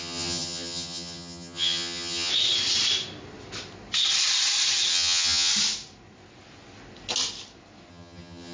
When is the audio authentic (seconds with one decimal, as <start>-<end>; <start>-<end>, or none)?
2.3-4.9; 5.5-7.9